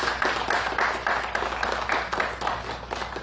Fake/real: real